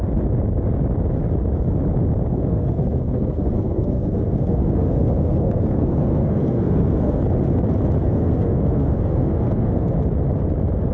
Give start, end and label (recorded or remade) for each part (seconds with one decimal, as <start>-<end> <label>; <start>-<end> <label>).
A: 0.0-2.3 recorded; 2.3-7.2 remade; 7.2-8.0 recorded; 8.0-9.9 remade; 9.9-10.9 recorded